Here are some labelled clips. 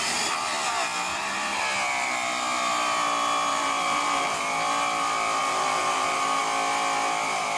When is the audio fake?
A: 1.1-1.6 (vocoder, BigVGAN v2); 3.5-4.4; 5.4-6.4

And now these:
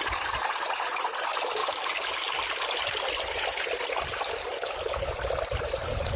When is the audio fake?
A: 0.0-1.6 (vocoder, BigVGAN v2); 4.4-6.2

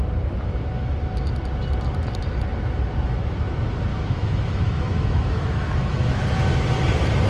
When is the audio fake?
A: 3.9-6.2 (autoencoder, DAC-VAE)

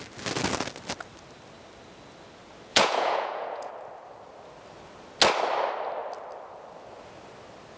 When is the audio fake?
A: 2.7-3.7 (vocoder, Vocos)

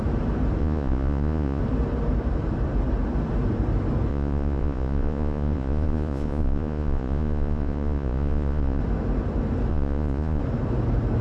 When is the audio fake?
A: 0.6-1.6 (vocoder, Vocos); 4.1-8.8; 9.7-10.4

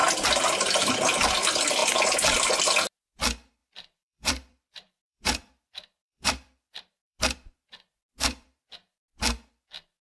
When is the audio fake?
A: 3.6-7.2 (vocoder, BigVGAN v2)

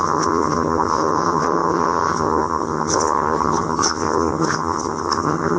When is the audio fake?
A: 0.0-5.6 (vocoder, HiFi-GAN)